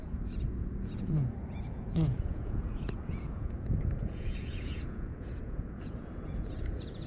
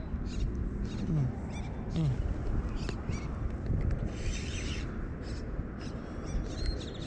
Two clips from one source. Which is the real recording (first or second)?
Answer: second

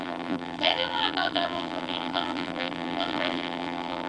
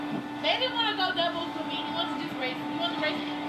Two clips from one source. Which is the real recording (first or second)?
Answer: second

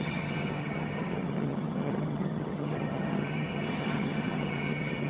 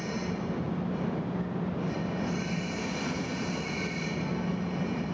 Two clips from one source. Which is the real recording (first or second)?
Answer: second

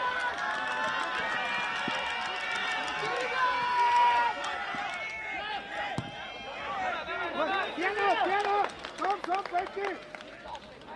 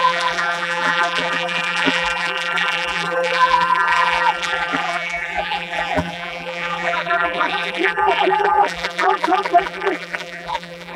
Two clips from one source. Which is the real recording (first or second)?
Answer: first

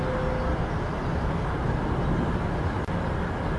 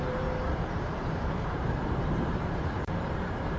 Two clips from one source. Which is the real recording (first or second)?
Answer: first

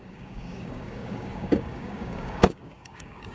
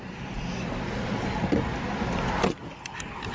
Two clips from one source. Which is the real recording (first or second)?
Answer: second